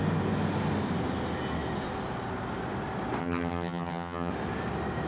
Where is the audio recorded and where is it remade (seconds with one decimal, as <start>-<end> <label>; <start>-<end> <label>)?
0.0-3.2 recorded; 3.2-4.3 remade; 4.3-5.1 recorded